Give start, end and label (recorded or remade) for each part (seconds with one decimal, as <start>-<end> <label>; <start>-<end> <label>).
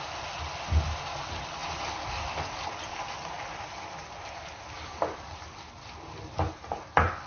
0.0-7.3 recorded